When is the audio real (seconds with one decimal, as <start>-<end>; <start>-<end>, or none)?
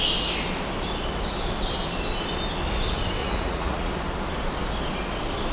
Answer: 0.0-3.2; 3.9-5.5